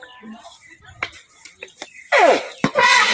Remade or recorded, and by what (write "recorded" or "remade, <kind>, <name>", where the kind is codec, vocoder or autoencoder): recorded